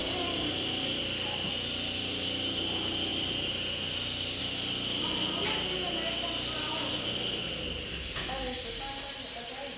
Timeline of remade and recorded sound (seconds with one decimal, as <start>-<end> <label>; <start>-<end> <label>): 0.0-9.8 recorded